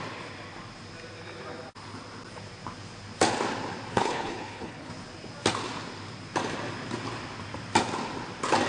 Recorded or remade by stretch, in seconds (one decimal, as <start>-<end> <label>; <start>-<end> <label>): 0.0-3.9 recorded; 3.9-4.9 remade; 4.9-8.7 recorded